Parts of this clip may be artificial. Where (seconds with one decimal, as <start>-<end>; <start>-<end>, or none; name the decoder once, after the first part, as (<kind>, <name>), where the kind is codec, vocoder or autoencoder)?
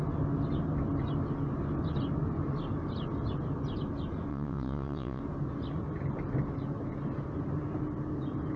4.3-5.2 (vocoder, WaveNeXt)